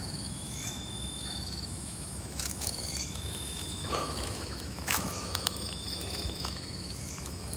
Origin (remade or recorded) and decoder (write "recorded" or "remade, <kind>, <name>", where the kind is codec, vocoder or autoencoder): remade, autoencoder, DAC-VAE